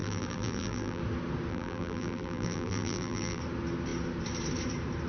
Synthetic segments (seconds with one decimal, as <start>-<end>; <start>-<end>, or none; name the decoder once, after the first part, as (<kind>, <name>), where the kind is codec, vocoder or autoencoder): 0.0-1.0 (vocoder, BigVGAN v2); 1.5-3.4